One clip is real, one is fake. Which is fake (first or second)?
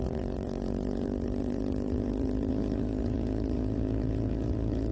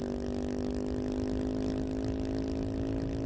first